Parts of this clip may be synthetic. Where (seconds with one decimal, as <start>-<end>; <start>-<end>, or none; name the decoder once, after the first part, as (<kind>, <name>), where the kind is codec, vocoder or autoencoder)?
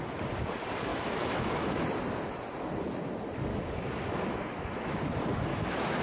0.9-1.8 (autoencoder, DAC-VAE); 3.5-5.0; 5.5-6.0